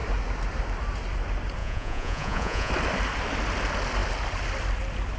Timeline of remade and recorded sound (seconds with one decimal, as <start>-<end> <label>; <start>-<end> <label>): 0.0-1.6 recorded; 1.6-2.7 remade; 2.7-5.2 recorded

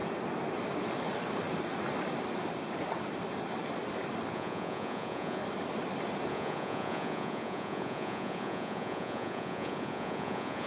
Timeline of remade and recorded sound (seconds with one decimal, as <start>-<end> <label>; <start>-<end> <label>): 0.0-4.3 recorded; 4.3-5.4 remade; 5.4-6.3 recorded; 6.3-10.7 remade

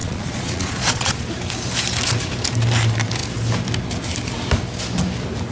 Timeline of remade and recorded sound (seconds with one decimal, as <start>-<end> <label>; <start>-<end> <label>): 0.0-1.3 remade; 1.3-5.5 recorded

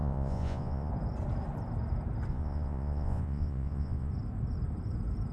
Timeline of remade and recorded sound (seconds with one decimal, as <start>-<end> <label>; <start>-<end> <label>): 0.0-0.9 remade; 0.9-2.3 recorded; 2.3-4.1 remade; 4.1-5.3 recorded

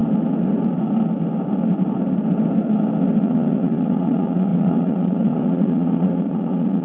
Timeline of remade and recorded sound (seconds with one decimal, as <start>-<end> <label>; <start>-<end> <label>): 0.0-3.2 recorded; 3.2-6.8 remade

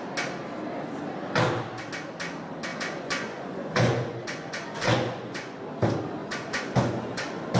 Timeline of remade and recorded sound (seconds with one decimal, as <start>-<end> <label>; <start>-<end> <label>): 0.0-2.7 recorded; 2.7-5.6 remade; 5.6-6.2 recorded; 6.2-7.6 remade

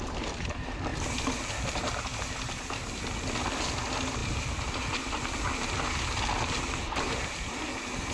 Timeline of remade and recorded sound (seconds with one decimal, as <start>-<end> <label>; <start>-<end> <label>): 0.0-8.1 recorded